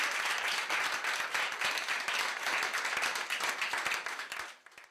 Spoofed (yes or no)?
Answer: yes